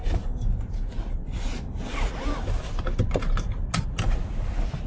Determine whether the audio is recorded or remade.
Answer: recorded